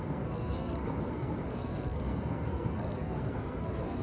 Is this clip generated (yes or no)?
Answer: yes